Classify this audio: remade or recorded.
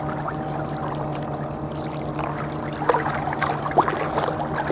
recorded